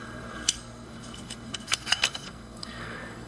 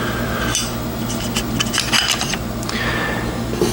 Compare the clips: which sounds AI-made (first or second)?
first